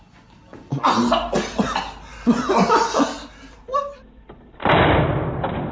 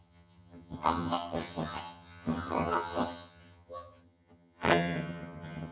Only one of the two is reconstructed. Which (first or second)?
second